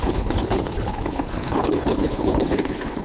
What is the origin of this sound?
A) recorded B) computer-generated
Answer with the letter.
B